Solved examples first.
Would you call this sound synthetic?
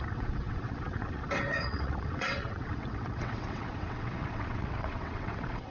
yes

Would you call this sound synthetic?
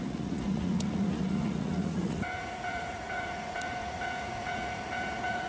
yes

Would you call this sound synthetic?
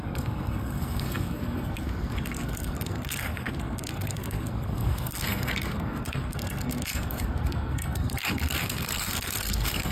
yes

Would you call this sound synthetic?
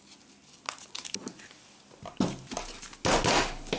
no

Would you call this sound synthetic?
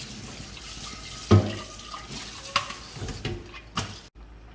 no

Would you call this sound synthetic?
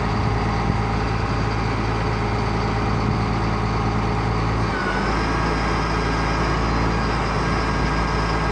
no